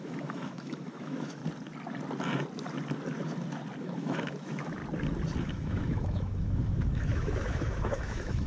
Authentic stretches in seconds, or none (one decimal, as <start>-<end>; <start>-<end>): 1.4-3.8; 4.8-5.4